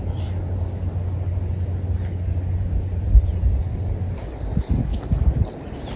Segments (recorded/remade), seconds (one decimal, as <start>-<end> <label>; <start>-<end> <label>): 0.0-6.0 recorded